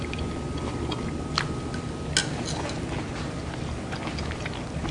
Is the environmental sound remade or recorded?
recorded